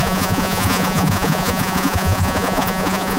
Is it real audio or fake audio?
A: fake